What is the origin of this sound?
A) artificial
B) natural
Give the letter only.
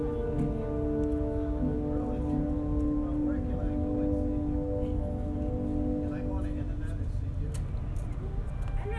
B